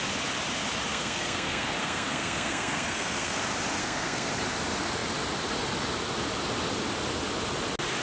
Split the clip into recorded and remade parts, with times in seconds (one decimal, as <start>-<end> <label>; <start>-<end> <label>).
0.0-0.9 recorded; 0.9-3.4 remade; 3.4-3.8 recorded; 3.8-4.3 remade; 4.3-8.0 recorded